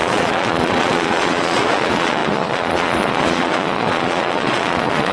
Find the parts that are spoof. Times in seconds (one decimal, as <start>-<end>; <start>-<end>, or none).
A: 0.0-5.1